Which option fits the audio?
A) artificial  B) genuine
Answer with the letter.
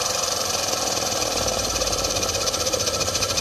A